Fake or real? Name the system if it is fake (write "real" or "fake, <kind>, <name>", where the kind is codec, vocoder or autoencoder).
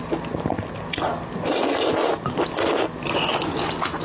real